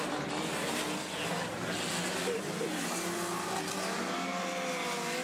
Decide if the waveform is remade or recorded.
recorded